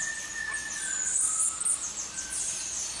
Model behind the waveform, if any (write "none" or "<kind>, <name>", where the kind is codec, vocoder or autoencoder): none